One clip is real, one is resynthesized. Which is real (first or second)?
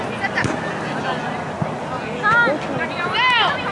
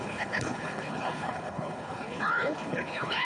first